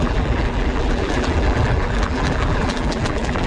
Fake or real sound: fake